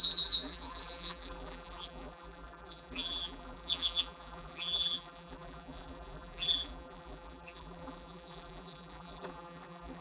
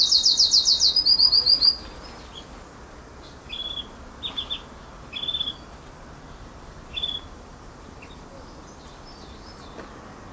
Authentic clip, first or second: second